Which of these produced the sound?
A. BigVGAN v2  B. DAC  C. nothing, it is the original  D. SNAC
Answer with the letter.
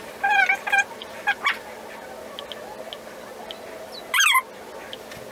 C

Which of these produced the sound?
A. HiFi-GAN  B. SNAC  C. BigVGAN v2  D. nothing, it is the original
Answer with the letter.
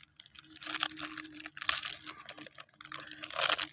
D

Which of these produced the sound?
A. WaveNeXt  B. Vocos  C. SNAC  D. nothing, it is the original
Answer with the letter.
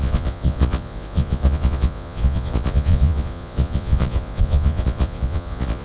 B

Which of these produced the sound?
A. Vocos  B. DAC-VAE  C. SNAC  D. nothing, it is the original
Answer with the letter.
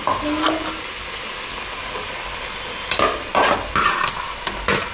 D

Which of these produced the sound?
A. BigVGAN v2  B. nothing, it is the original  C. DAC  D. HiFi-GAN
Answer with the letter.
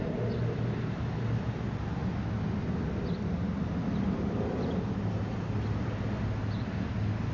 B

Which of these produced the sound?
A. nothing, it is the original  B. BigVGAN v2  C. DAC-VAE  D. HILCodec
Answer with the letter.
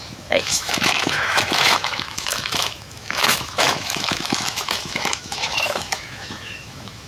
C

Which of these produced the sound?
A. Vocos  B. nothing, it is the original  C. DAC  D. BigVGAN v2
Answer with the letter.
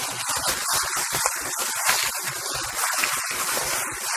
B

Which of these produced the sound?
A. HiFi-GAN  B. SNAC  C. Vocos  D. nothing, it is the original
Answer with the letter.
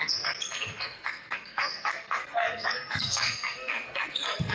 B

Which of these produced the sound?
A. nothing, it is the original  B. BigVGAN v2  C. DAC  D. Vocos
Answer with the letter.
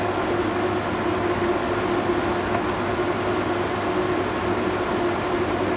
A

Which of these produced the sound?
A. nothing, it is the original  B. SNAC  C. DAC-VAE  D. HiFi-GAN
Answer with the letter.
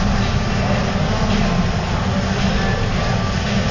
A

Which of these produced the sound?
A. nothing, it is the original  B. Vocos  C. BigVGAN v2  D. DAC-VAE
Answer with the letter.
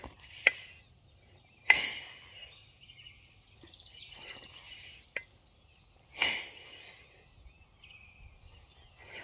A